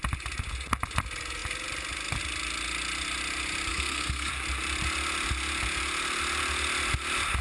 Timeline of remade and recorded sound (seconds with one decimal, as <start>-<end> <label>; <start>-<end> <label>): 0.0-3.7 recorded; 3.7-4.3 remade; 4.3-7.4 recorded